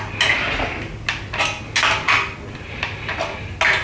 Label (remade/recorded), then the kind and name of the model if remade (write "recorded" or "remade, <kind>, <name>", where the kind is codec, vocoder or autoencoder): recorded